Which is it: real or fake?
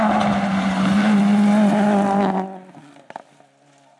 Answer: real